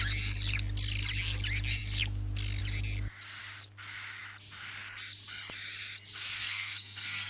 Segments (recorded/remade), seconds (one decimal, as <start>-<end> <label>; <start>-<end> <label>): 0.0-6.4 recorded; 6.4-7.3 remade